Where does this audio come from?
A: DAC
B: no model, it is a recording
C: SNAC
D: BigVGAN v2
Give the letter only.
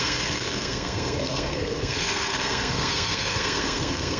C